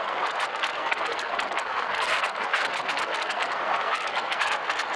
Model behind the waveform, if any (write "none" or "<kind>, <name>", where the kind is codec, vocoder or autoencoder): codec, SNAC